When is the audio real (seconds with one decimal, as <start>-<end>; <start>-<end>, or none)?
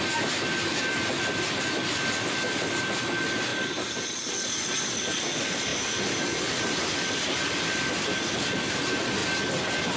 0.0-10.0